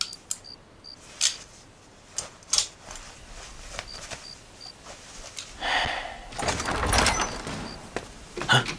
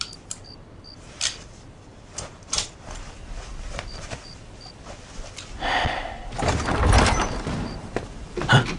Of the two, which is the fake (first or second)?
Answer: second